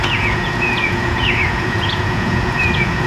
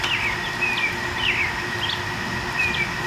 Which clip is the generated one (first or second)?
first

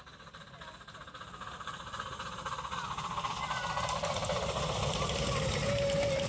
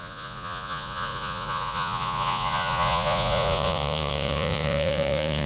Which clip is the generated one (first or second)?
second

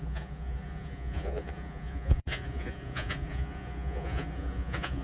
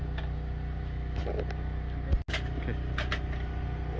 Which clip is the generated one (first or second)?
first